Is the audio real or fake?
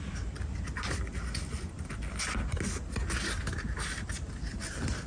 real